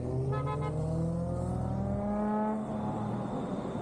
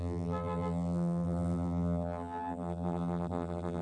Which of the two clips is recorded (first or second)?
first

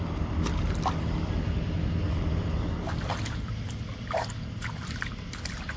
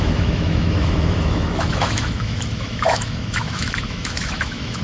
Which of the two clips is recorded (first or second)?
first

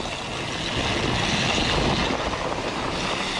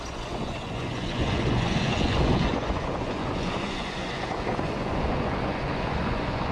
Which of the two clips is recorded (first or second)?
first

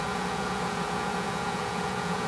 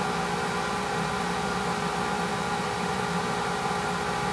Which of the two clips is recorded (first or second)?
second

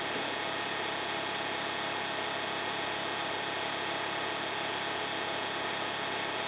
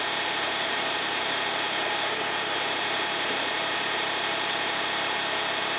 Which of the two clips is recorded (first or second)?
first